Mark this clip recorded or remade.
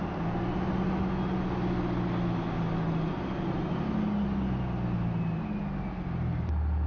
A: recorded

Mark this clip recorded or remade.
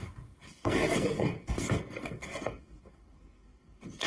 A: remade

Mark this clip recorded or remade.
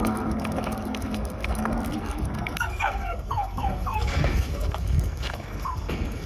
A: remade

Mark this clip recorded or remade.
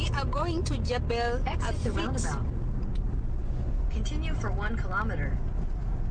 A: recorded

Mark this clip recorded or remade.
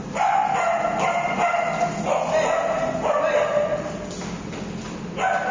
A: recorded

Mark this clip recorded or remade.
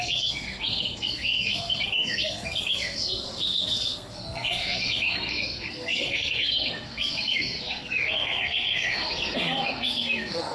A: remade